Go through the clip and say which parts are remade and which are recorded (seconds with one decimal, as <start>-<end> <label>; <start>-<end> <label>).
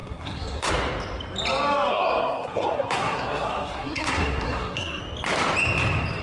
0.0-0.7 remade; 0.7-1.9 recorded; 1.9-5.0 remade; 5.0-6.2 recorded